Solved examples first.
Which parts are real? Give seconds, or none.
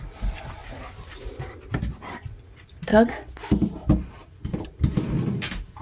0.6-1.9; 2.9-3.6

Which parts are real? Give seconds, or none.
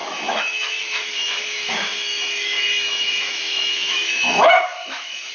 none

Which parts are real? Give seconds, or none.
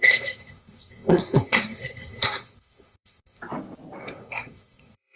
3.4-4.0